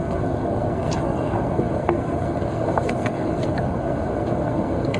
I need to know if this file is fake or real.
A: fake